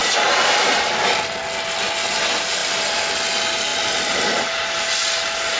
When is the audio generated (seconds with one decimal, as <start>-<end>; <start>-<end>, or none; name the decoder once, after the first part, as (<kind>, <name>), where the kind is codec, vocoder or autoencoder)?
0.0-1.4 (vocoder, BigVGAN v2); 2.6-3.1; 3.7-4.5